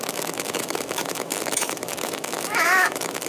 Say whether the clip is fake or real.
fake